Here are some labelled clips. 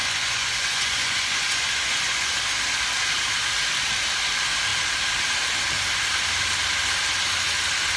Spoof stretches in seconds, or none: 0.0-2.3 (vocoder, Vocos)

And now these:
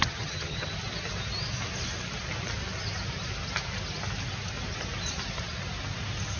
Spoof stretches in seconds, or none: 0.0-0.7 (vocoder, HiFi-GAN)

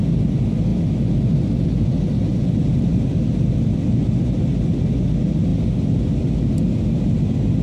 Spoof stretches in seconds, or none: 2.3-3.1 (vocoder, BigVGAN v2)

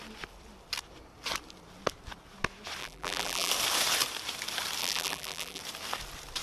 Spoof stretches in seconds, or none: 2.8-3.5 (vocoder, BigVGAN v2); 4.8-5.6

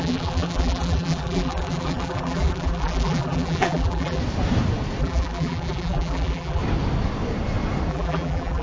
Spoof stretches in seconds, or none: 0.0-4.2 (vocoder, BigVGAN v2); 5.0-6.6; 7.9-8.6

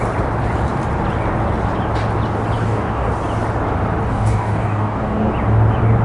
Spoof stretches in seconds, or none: 2.6-3.1 (codec, DAC); 4.1-5.3